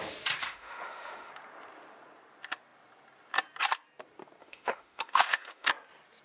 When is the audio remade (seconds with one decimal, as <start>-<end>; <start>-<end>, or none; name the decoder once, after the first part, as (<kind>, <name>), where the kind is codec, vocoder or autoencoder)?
0.4-1.3 (autoencoder, DAC-VAE); 4.4-5.7